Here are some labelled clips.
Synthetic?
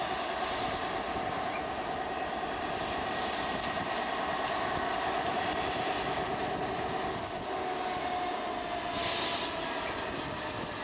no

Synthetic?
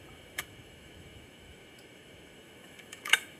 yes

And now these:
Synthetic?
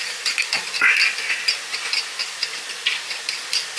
no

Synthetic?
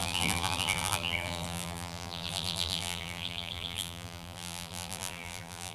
yes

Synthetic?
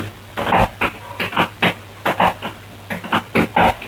no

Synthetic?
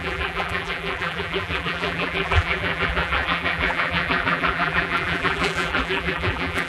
yes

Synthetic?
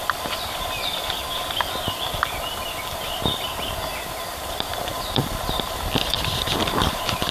yes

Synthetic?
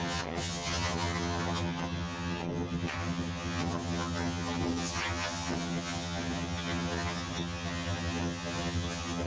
yes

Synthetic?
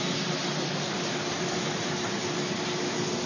no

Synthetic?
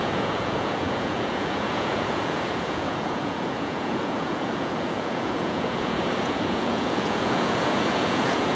yes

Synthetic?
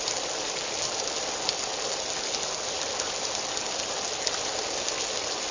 no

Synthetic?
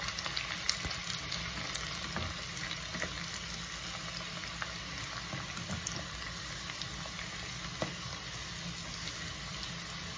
no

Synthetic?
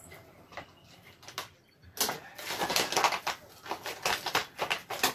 no